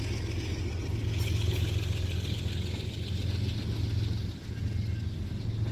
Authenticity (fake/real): real